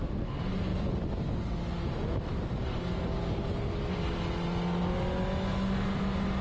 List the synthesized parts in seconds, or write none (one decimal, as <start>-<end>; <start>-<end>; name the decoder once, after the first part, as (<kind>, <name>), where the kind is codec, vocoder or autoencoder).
none